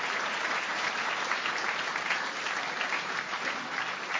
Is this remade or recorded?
remade